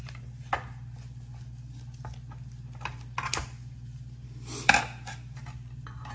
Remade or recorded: recorded